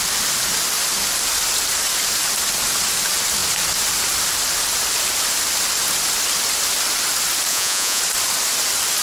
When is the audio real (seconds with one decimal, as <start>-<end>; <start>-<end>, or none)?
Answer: 0.0-7.5; 8.0-9.0